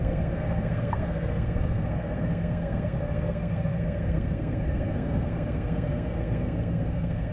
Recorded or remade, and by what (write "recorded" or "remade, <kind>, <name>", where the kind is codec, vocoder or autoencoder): remade, codec, SNAC